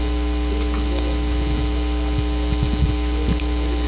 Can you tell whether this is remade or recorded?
recorded